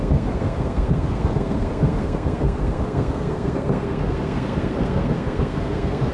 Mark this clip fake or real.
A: fake